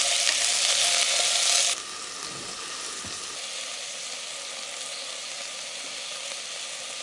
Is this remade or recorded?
recorded